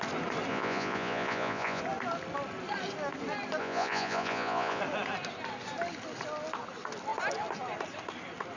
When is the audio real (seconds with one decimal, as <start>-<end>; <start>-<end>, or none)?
0.0-0.5; 1.8-3.6; 4.8-8.6